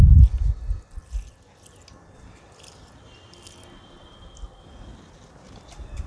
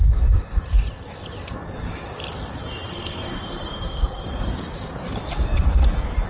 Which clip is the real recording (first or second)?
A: first